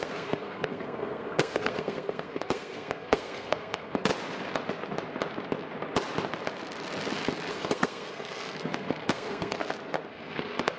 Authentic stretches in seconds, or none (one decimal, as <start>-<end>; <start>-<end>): 4.1-7.5; 9.6-10.1